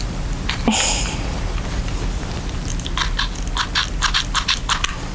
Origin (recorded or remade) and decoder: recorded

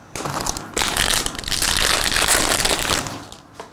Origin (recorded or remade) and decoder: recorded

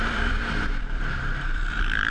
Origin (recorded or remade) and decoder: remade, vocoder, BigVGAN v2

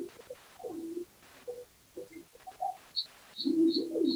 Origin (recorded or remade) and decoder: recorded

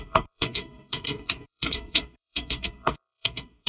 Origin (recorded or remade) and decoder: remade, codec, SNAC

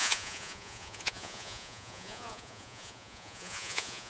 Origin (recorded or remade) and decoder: remade, vocoder, Vocos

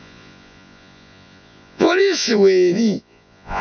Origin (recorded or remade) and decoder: remade, vocoder, Vocos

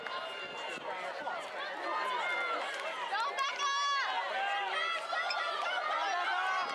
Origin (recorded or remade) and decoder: recorded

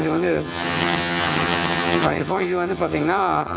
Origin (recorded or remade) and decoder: remade, vocoder, HiFi-GAN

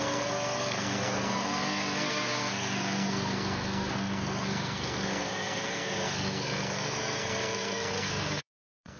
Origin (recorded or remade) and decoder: remade, codec, SNAC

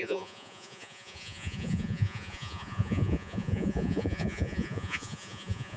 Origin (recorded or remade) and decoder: remade, vocoder, Vocos